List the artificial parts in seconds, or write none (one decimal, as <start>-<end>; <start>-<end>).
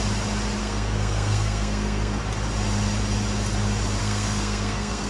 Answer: 0.6-2.2; 4.0-5.1